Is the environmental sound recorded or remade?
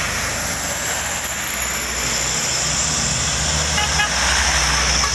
recorded